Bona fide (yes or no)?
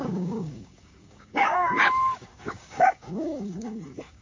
no